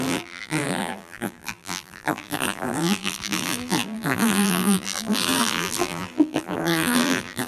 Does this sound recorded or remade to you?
remade